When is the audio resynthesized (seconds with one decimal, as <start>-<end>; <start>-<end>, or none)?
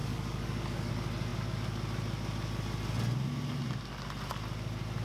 0.0-0.9